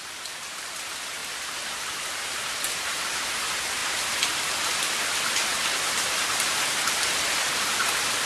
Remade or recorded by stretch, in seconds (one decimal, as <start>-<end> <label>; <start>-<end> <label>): 0.0-8.3 recorded